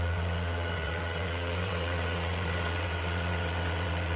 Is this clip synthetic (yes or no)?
yes